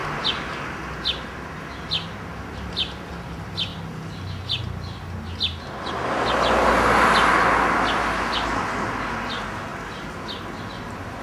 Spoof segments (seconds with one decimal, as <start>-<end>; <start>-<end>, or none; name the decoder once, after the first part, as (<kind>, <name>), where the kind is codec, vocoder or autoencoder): none